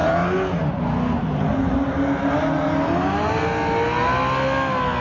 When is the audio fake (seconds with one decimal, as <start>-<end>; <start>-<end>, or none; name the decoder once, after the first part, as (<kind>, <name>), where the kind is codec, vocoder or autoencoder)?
none